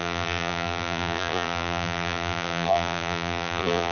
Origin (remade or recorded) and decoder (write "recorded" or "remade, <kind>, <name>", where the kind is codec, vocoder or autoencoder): remade, vocoder, BigVGAN v2